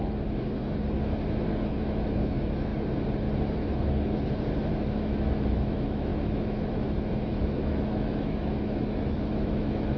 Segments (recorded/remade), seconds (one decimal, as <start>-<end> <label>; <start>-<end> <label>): 0.0-0.6 remade; 0.6-1.7 recorded; 1.7-2.7 remade; 2.7-4.5 recorded; 4.5-10.0 remade